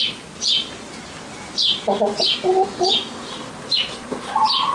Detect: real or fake real